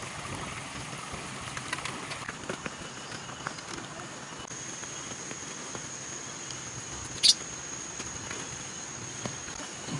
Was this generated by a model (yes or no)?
no